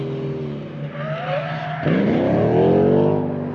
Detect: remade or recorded recorded